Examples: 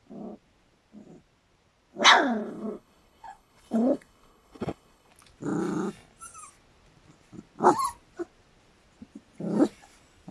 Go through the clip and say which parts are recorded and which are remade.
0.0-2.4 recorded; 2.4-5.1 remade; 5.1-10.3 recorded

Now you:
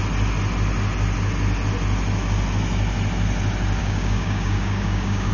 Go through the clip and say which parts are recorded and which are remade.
0.0-3.8 recorded; 3.8-5.3 remade